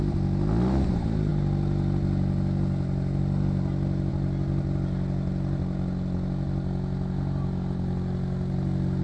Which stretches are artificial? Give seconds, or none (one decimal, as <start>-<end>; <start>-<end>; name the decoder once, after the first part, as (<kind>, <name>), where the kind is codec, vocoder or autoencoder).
none